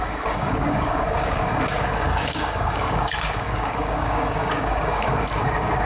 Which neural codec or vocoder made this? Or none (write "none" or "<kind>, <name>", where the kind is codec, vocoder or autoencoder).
codec, DAC